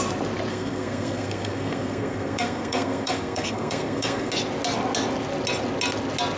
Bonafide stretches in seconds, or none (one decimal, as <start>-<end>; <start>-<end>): 0.0-0.5; 4.3-6.4